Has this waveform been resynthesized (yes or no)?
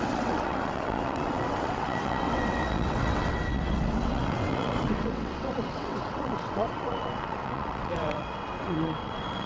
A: yes